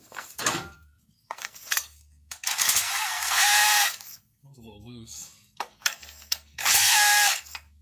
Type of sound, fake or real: fake